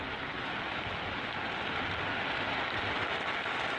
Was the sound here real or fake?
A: real